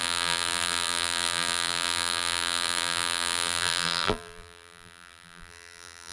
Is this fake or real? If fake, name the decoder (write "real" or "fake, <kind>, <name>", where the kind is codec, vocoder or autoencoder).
fake, vocoder, BigVGAN v2